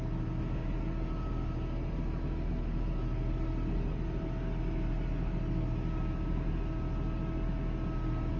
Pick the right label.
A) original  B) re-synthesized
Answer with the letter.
A